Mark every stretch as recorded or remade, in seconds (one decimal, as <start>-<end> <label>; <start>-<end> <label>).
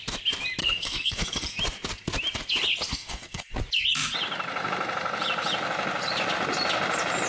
0.0-0.6 recorded; 0.6-1.6 remade; 1.6-2.9 recorded; 2.9-3.5 remade; 3.5-7.3 recorded